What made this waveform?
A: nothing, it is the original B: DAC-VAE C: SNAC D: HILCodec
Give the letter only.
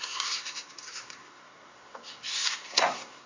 C